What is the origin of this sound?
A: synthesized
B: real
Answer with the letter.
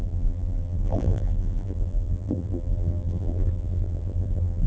A